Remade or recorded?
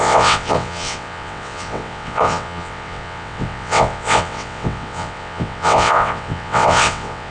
remade